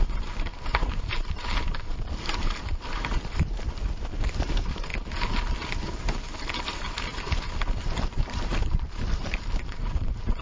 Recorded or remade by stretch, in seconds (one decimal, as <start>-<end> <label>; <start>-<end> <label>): 0.0-4.9 remade; 4.9-5.7 recorded; 5.7-7.1 remade; 7.1-7.8 recorded; 7.8-10.4 remade